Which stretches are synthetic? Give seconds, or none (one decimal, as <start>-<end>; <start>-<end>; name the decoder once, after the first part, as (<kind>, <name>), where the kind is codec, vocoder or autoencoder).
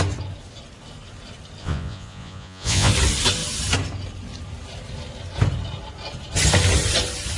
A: 1.6-2.9 (vocoder, Vocos)